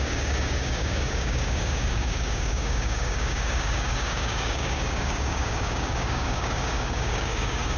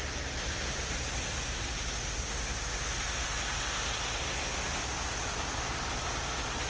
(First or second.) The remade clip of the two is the first